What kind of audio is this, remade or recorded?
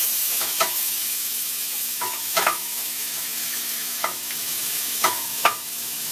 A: remade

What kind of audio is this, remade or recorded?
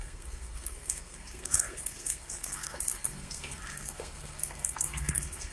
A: remade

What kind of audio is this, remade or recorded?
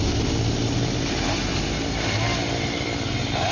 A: recorded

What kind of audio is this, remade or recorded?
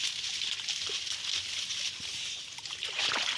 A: recorded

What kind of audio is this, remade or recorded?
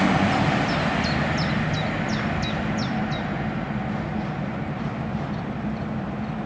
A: recorded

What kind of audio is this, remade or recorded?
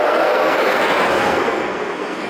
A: remade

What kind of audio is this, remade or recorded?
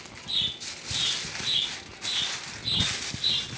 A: recorded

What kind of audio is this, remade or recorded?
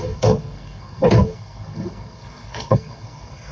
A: remade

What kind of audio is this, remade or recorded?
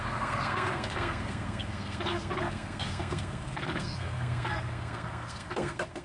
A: remade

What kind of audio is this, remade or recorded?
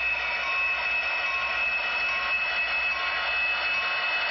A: recorded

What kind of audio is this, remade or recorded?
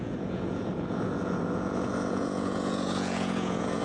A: remade